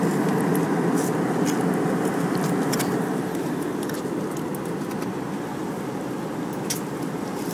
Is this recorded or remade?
recorded